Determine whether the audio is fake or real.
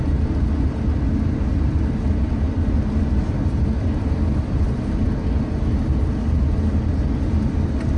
real